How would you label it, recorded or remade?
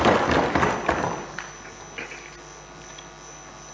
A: recorded